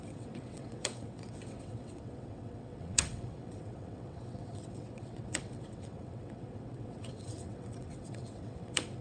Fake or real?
fake